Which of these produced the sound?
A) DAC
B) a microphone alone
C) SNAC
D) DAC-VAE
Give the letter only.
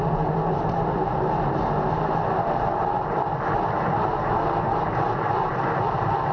B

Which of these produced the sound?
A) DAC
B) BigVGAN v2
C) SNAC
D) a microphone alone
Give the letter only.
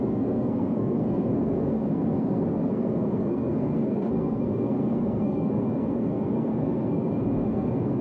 C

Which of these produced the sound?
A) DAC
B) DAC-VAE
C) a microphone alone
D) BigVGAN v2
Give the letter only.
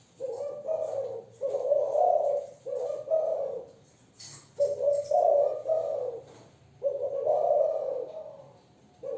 C